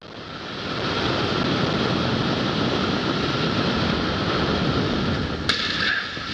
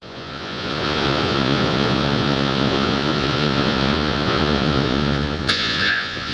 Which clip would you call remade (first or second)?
second